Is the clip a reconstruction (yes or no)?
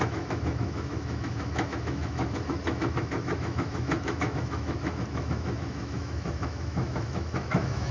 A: yes